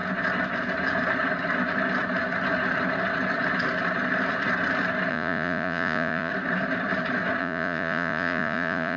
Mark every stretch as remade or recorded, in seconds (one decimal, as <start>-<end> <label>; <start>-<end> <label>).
0.0-5.1 recorded; 5.1-6.3 remade; 6.3-7.4 recorded; 7.4-9.0 remade